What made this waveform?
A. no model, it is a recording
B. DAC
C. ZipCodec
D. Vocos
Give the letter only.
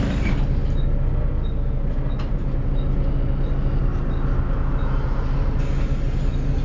A